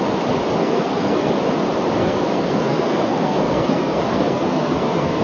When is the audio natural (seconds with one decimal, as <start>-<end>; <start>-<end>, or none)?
0.0-0.6; 1.3-2.0